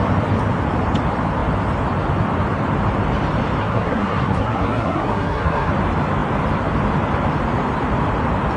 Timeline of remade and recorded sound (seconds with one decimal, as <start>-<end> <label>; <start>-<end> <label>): 0.0-3.6 recorded; 3.6-5.7 remade; 5.7-8.6 recorded